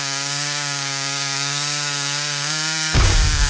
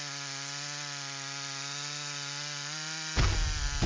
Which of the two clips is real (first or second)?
second